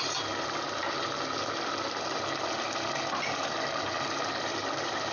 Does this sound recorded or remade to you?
recorded